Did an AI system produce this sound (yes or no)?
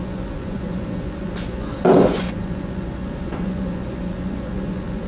yes